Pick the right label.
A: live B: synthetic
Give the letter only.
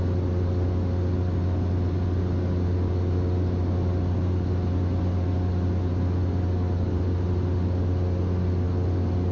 A